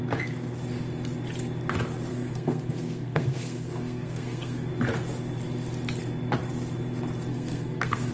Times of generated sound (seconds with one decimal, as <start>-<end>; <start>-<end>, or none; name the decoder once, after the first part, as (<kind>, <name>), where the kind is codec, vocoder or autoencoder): 2.1-4.7 (codec, SNAC); 7.3-8.1